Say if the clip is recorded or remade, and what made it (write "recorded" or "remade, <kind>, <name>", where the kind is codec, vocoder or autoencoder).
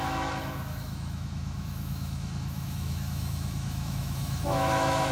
remade, autoencoder, DAC-VAE